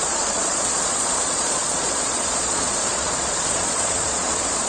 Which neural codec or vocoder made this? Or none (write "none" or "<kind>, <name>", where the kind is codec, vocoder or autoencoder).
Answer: vocoder, Vocos